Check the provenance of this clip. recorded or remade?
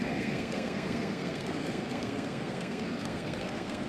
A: remade